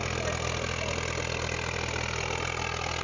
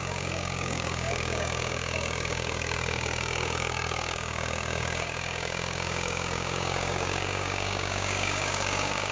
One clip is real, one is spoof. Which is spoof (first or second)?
second